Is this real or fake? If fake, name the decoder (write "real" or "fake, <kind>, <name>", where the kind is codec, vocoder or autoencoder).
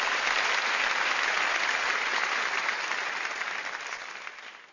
real